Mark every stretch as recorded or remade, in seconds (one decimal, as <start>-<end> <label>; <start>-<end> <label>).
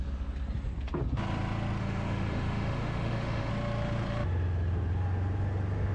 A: 0.0-1.8 recorded; 1.8-3.5 remade; 3.5-5.9 recorded